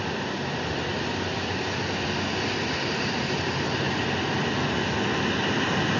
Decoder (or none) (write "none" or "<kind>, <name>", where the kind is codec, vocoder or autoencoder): none